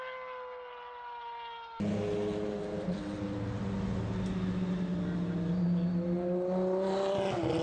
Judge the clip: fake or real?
real